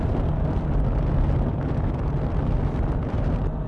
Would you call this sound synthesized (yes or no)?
no